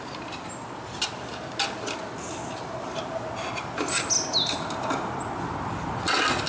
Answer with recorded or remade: recorded